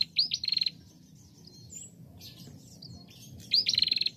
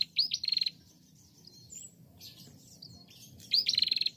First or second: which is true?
first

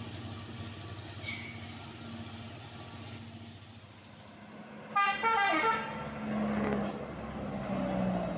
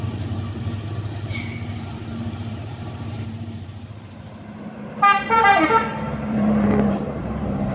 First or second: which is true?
first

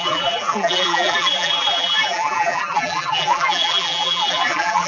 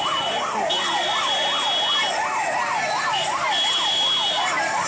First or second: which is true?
second